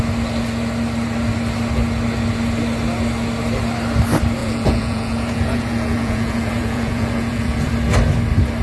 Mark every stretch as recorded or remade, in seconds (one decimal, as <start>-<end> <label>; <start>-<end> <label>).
0.0-4.4 recorded; 4.4-7.7 remade; 7.7-8.6 recorded